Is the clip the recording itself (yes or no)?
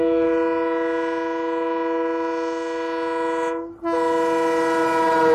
yes